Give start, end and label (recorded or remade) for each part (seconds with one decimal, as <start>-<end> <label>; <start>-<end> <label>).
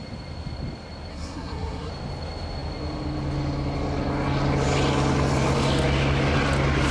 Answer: 0.0-1.1 recorded; 1.1-1.9 remade; 1.9-6.9 recorded